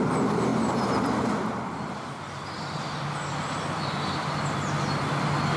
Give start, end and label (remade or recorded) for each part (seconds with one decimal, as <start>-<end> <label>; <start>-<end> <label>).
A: 0.0-5.6 recorded